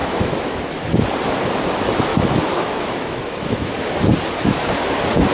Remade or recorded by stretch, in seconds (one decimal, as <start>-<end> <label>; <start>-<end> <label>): 0.0-0.6 remade; 0.6-2.1 recorded; 2.1-3.7 remade; 3.7-5.3 recorded